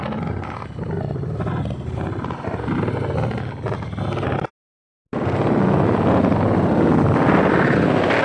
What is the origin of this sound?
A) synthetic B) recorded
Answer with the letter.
B